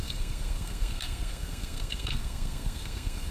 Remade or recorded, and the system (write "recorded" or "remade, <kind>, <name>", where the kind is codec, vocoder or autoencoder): remade, codec, SNAC